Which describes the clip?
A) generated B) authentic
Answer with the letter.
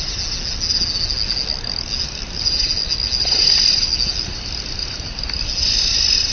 B